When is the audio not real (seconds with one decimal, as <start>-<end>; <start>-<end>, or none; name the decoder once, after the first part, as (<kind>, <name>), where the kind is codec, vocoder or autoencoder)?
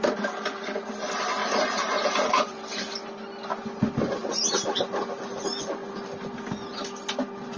1.4-2.8 (vocoder, BigVGAN v2); 4.2-4.8